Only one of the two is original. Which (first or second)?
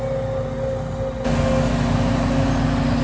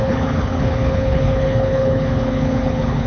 first